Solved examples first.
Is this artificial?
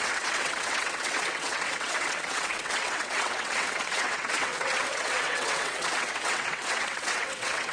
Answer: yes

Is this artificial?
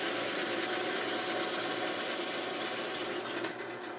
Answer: no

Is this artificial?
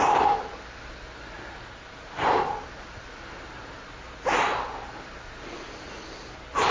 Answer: no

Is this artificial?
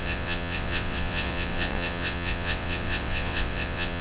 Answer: yes